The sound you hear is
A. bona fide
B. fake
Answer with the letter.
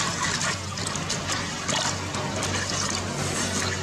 A